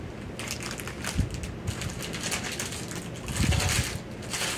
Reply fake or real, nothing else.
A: real